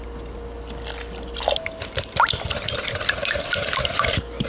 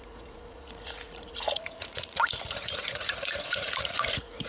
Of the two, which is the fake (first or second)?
second